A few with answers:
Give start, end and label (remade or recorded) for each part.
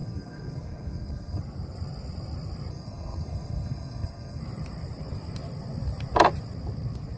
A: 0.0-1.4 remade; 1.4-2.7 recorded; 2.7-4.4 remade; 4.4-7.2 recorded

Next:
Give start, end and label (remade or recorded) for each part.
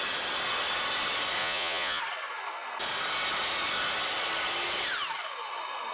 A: 0.0-1.4 recorded; 1.4-2.0 remade; 2.0-5.9 recorded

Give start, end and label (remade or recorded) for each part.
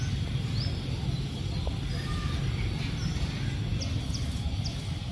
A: 0.0-5.1 recorded